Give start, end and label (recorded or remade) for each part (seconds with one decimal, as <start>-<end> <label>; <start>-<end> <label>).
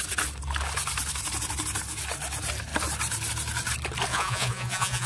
0.0-4.1 recorded; 4.1-5.1 remade